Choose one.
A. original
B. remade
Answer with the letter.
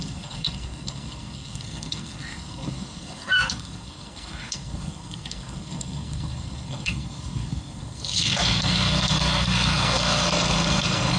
B